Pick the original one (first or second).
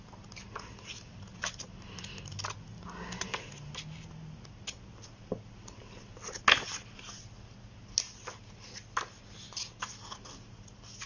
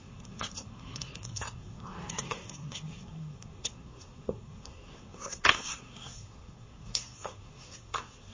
first